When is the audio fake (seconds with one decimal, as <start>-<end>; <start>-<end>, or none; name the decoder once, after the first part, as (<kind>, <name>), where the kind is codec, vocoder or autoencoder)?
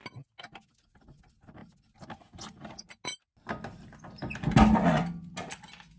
none